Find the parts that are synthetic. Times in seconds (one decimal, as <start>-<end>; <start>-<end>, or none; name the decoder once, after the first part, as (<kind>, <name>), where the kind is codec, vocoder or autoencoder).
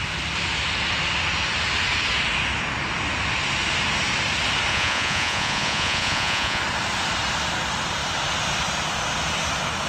4.7-6.6 (vocoder, Vocos)